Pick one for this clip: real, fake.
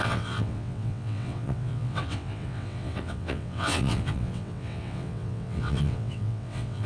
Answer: fake